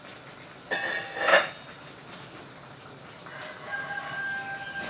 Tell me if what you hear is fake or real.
real